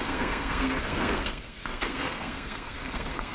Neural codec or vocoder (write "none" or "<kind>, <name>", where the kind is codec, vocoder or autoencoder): codec, SNAC